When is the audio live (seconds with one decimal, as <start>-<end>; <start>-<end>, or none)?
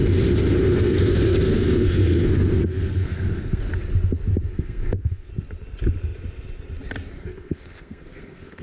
0.0-0.7; 3.6-4.5; 5.3-7.2